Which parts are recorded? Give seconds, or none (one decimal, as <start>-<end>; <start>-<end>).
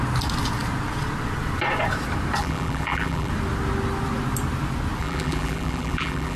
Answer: 0.0-2.4; 3.3-5.0